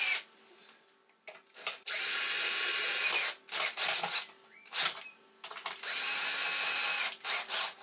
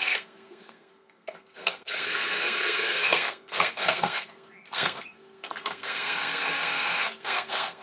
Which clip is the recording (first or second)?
first